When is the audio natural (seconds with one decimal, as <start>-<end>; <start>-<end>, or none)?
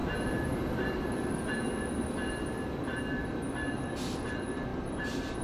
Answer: 3.2-4.7